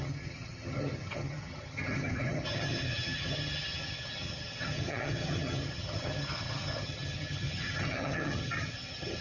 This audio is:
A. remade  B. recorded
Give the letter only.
A